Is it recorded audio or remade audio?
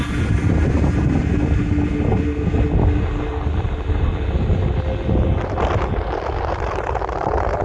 recorded